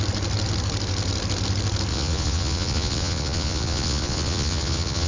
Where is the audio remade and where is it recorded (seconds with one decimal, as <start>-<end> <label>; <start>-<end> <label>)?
0.0-1.9 recorded; 1.9-5.1 remade